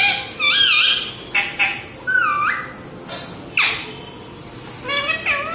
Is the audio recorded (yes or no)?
yes